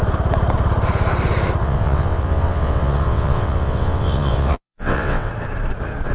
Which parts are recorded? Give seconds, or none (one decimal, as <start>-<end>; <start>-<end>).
0.0-1.6; 5.3-6.1